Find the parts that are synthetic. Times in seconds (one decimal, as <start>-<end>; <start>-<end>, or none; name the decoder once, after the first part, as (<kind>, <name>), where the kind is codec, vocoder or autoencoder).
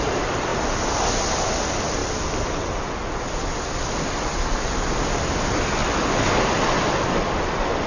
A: 0.5-1.2 (vocoder, BigVGAN v2)